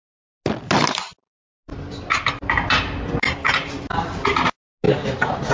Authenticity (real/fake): real